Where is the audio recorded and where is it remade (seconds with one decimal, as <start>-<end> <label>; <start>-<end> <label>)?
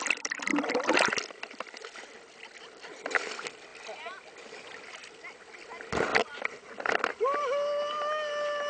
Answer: 0.0-0.5 recorded; 0.5-1.0 remade; 1.0-3.7 recorded; 3.7-4.3 remade; 4.3-5.0 recorded; 5.0-5.6 remade; 5.6-8.7 recorded